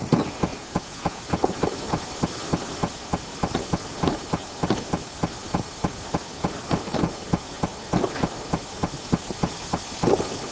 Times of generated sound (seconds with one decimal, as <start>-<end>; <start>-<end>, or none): 0.5-1.2